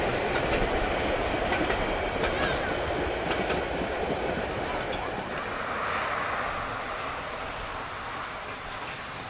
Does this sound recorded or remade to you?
recorded